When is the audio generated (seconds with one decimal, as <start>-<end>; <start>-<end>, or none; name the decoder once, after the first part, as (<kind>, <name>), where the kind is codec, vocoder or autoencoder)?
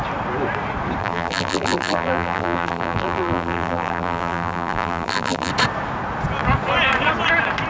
1.0-5.5 (vocoder, BigVGAN v2)